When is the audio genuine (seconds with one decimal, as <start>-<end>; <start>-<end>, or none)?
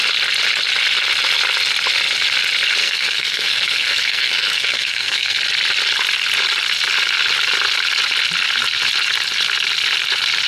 0.0-2.8; 5.4-10.5